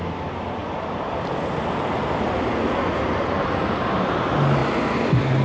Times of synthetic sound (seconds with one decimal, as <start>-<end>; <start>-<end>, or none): none